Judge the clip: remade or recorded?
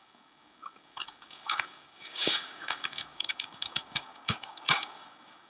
remade